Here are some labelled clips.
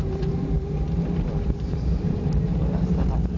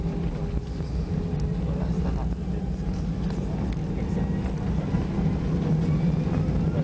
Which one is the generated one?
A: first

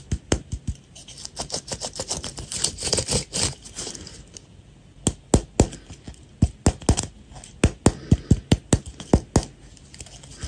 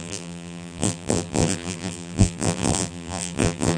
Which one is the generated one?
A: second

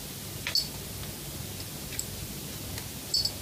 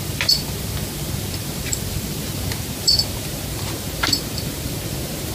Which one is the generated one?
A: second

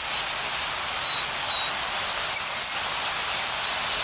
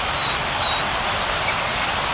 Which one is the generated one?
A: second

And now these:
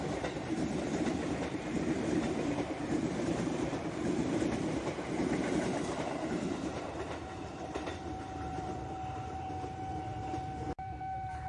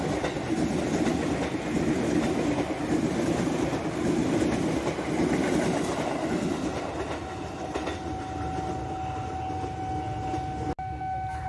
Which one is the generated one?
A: first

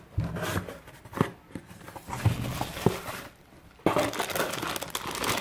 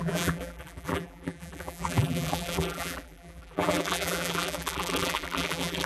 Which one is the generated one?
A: second